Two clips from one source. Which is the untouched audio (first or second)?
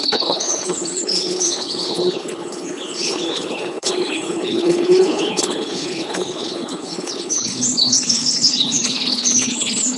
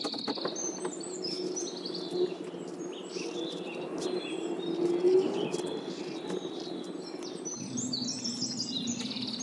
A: second